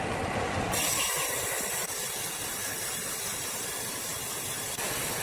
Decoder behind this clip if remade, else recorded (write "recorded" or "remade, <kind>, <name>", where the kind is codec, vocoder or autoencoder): recorded